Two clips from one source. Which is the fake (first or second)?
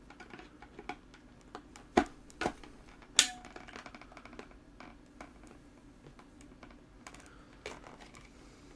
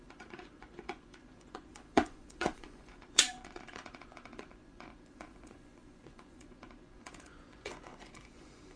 second